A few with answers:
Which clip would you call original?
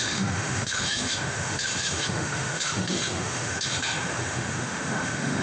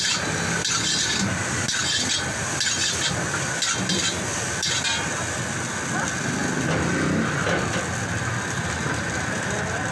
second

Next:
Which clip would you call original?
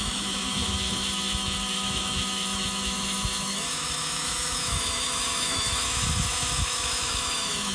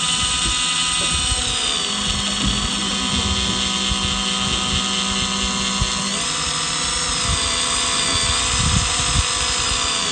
second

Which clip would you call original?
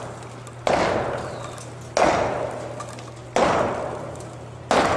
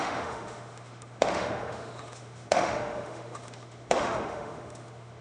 first